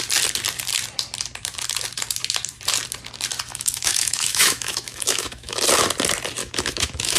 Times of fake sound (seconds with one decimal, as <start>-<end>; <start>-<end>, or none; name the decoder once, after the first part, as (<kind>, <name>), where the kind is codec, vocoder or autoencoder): 3.5-5.6 (autoencoder, DAC-VAE); 6.4-7.2